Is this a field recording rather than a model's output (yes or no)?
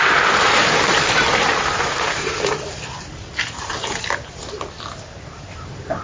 no